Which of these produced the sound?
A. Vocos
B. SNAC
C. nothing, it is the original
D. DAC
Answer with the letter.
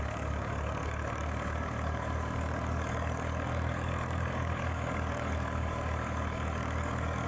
D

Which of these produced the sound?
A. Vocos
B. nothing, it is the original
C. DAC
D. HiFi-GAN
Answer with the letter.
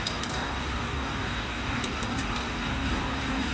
C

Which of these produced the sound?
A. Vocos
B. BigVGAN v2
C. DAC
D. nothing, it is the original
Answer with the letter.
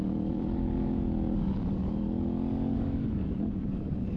C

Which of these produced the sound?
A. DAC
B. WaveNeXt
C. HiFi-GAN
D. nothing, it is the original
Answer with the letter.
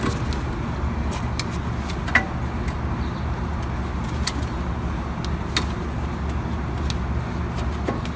D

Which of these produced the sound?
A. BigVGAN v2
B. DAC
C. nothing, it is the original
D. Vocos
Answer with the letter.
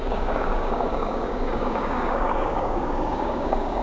B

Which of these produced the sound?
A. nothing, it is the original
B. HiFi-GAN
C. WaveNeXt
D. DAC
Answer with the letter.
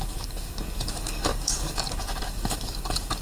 D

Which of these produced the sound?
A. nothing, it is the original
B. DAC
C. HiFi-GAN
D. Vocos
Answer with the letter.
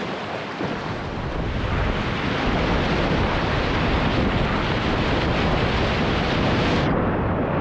A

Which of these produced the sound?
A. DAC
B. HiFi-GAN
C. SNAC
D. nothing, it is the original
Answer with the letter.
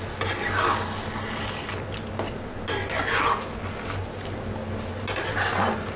D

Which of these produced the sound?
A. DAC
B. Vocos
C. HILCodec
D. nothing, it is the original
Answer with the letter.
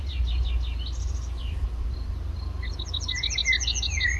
D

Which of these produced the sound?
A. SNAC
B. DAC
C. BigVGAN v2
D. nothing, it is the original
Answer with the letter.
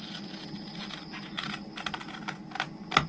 D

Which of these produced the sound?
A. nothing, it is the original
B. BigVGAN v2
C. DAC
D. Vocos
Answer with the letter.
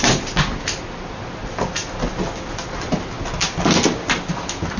A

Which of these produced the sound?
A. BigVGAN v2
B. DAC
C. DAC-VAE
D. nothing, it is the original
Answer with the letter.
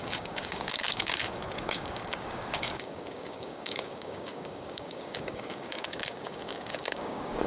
B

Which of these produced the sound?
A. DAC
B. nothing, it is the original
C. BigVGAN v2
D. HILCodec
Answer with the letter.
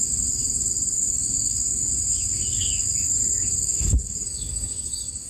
A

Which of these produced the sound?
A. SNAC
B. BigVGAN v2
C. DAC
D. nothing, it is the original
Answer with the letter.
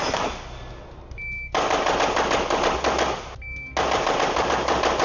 D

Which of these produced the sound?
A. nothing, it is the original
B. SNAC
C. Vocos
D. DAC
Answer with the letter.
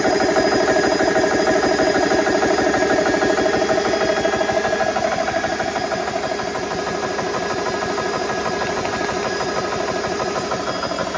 A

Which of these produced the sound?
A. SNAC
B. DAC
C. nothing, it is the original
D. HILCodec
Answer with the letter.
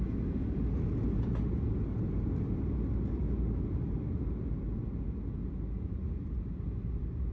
C